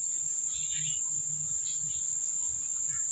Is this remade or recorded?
recorded